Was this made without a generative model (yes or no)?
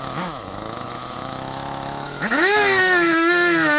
no